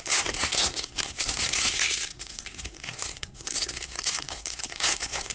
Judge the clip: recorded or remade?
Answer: remade